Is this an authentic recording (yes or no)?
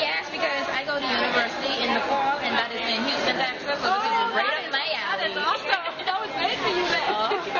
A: yes